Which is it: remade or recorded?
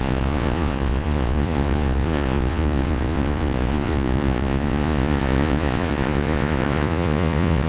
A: remade